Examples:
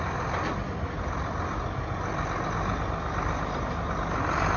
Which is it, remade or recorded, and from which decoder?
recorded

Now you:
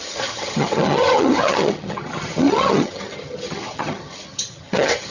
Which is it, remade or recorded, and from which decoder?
remade, vocoder, HiFi-GAN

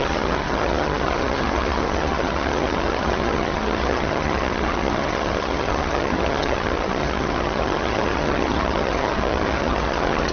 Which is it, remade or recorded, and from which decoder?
remade, vocoder, HiFi-GAN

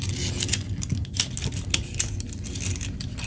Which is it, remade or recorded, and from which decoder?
recorded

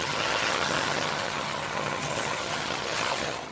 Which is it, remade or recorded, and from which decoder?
remade, vocoder, HiFi-GAN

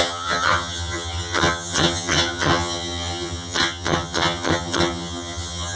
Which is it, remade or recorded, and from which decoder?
remade, vocoder, HiFi-GAN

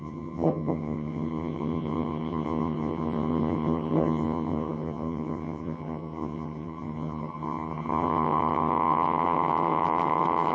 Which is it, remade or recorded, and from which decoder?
remade, vocoder, HiFi-GAN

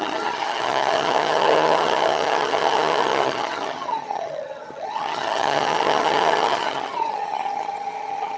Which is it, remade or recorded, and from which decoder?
remade, vocoder, HiFi-GAN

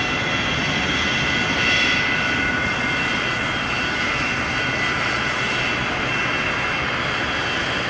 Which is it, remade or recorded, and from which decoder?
recorded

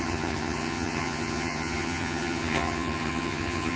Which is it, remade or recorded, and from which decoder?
remade, vocoder, HiFi-GAN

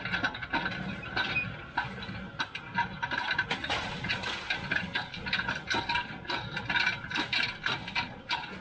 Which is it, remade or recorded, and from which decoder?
recorded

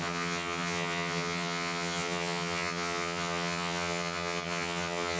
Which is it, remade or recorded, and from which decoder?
remade, vocoder, HiFi-GAN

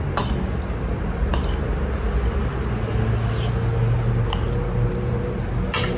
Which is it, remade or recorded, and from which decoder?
recorded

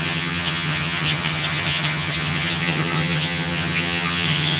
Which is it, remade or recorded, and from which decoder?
remade, vocoder, HiFi-GAN